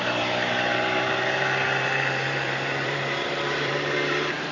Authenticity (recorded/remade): remade